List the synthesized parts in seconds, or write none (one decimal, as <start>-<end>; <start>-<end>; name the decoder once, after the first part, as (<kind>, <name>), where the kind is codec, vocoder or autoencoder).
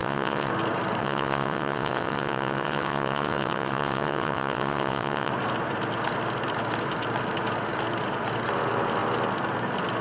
0.0-0.5 (vocoder, WaveNeXt); 1.0-5.3